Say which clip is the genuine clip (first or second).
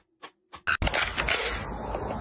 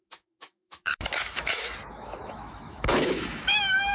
first